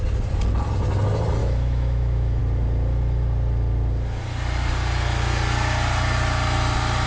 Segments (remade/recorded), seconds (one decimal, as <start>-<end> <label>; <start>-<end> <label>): 0.0-1.4 recorded; 1.4-2.4 remade; 2.4-7.1 recorded